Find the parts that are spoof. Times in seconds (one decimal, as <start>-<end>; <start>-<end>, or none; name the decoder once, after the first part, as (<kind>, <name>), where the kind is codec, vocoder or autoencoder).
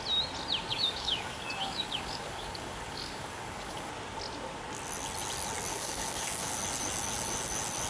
0.7-3.9 (codec, DAC); 5.7-6.5